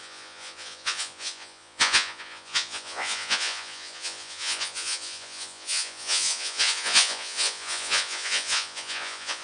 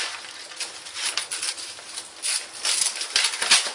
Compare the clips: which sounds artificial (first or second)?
first